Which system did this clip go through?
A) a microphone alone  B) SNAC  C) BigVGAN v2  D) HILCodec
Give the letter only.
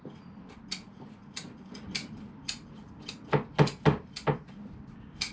A